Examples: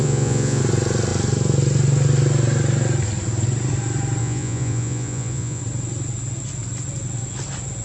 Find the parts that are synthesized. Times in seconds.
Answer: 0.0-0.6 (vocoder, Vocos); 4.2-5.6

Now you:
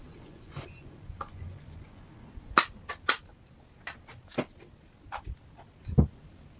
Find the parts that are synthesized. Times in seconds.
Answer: 0.0-2.3 (vocoder, Vocos)